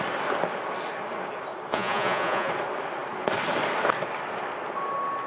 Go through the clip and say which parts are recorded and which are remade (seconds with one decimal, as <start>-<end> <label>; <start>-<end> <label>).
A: 0.0-1.7 recorded; 1.7-2.5 remade; 2.5-5.3 recorded